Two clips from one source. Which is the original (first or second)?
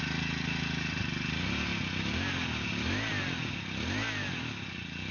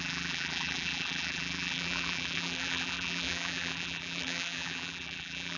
first